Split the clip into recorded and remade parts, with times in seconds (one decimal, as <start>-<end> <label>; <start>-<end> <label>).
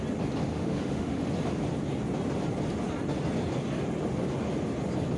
0.0-0.5 recorded; 0.5-1.2 remade; 1.2-5.2 recorded